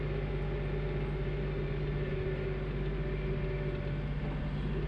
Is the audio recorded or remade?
recorded